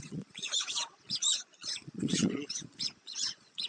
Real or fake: fake